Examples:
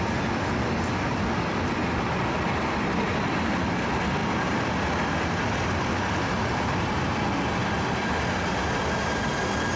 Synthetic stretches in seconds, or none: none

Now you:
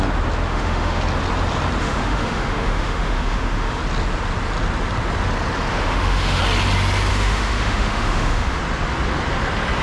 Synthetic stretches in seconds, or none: 0.5-1.0; 1.8-3.8; 5.7-6.4; 7.1-8.6

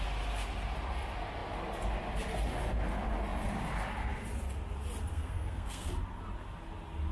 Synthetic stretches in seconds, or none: 5.1-5.9

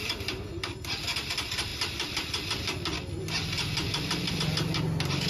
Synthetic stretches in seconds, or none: none

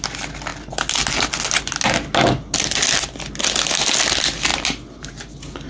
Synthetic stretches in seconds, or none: none

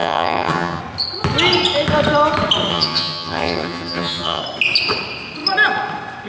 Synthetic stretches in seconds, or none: 0.0-0.8; 2.7-4.4

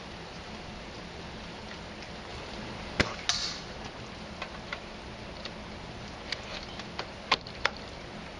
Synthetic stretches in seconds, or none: none

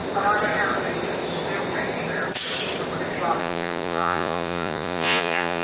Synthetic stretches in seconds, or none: 3.4-5.6